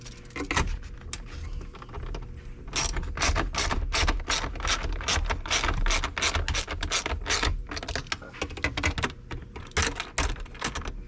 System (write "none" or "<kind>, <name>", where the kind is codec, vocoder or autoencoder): none